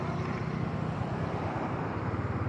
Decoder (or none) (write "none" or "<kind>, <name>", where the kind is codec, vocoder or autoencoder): none